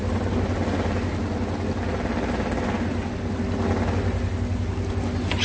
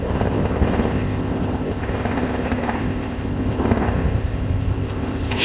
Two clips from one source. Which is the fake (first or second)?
second